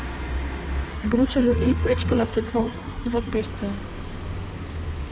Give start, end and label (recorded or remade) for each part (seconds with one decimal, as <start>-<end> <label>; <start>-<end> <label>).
0.0-0.9 recorded; 0.9-3.4 remade; 3.4-5.1 recorded